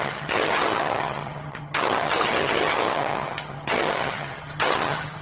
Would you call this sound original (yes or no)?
no